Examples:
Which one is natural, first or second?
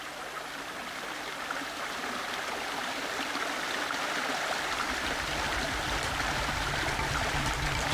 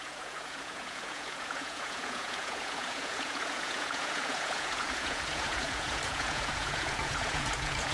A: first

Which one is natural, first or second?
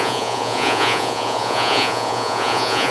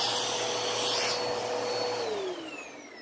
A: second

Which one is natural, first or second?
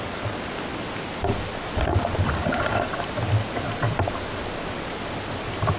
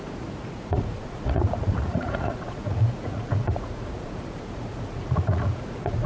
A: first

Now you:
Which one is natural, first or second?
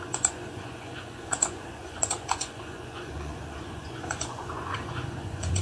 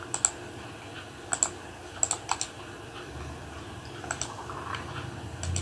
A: second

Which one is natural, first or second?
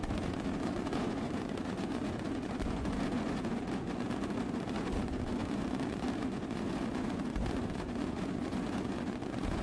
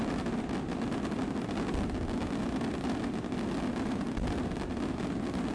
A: second